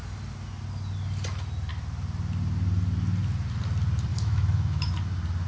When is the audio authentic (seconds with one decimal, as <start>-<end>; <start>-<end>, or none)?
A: 0.0-4.1; 4.9-5.5